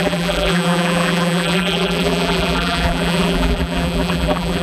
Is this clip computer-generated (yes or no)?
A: yes